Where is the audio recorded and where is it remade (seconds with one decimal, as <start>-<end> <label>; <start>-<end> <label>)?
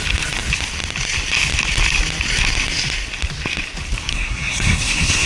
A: 0.0-4.1 recorded; 4.1-5.3 remade